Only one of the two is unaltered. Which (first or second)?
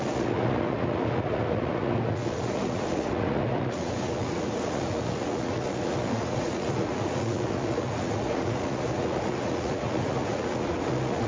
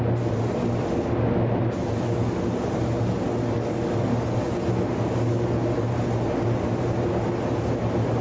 second